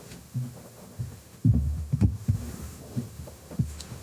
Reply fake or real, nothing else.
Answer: fake